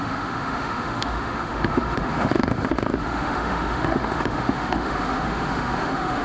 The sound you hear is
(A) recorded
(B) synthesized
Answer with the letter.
B